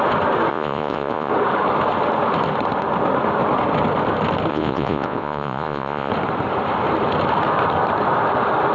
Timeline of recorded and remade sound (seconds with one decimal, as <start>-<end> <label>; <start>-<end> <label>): 0.0-0.5 recorded; 0.5-1.3 remade; 1.3-4.5 recorded; 4.5-6.1 remade; 6.1-8.7 recorded